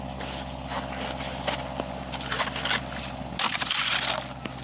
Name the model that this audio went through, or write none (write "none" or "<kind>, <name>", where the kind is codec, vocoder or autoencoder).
none